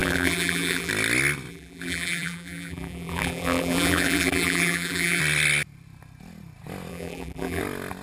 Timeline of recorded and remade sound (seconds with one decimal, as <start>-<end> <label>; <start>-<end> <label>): 0.0-0.9 remade; 0.9-1.5 recorded; 1.5-5.2 remade; 5.2-6.9 recorded; 6.9-7.6 remade; 7.6-8.0 recorded